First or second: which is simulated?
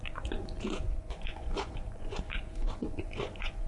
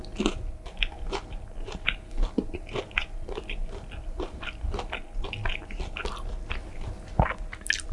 first